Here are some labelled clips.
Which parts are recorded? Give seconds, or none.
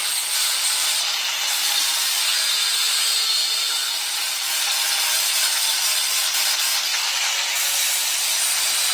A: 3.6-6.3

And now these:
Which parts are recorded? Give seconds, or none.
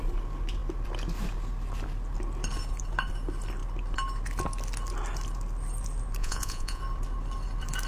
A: 0.0-6.2; 6.8-7.9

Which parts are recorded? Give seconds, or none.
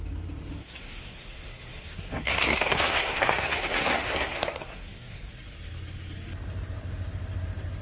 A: 0.0-0.6; 5.3-7.8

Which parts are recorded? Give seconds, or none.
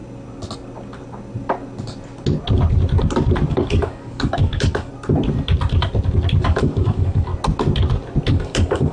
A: 0.0-3.5; 4.9-6.4; 7.3-8.3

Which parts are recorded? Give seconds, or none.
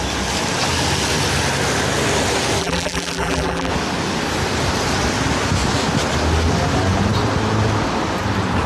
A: 0.0-2.6; 3.7-8.7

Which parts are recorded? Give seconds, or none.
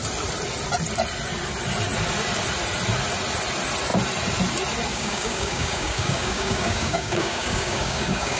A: 0.0-4.9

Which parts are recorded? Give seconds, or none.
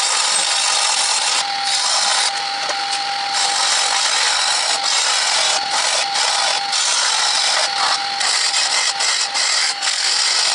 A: 0.0-9.6; 10.1-10.5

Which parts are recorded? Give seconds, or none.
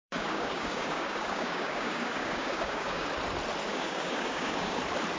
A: 3.1-3.7; 4.8-5.2